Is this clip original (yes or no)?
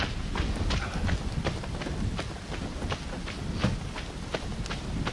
yes